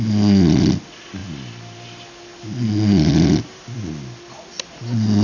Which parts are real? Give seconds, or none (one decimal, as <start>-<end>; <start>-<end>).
0.0-5.2